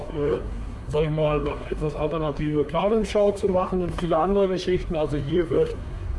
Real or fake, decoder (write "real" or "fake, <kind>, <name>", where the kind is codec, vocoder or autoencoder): fake, codec, SNAC